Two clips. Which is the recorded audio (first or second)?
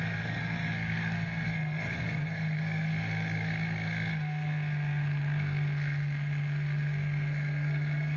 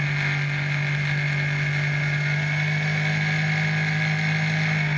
second